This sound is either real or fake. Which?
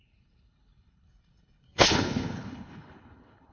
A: fake